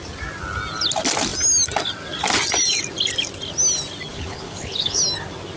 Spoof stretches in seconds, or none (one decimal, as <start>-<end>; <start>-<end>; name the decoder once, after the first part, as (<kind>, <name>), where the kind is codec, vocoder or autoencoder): 4.1-5.0 (codec, HILCodec)